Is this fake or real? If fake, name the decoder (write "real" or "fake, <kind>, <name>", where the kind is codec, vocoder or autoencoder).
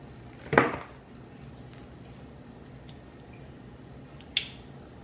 real